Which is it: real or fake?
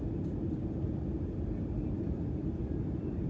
real